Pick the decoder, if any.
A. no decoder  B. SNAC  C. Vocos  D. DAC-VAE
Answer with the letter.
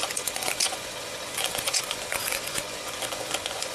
C